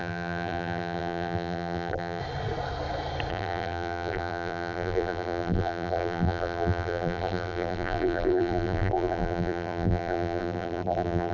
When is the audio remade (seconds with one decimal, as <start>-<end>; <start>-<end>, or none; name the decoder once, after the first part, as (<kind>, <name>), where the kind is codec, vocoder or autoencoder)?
0.0-2.2 (vocoder, BigVGAN v2); 3.3-11.3